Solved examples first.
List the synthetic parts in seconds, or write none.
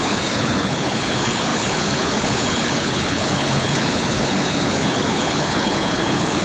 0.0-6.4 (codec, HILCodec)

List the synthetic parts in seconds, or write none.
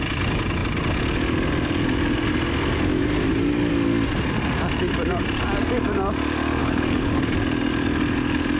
6.6-7.2 (codec, HILCodec)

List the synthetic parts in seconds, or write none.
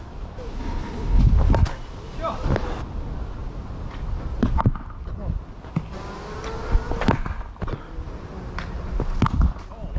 0.6-1.2 (codec, HILCodec)